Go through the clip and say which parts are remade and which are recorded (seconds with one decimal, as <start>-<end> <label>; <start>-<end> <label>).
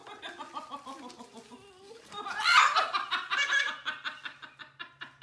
0.0-5.2 recorded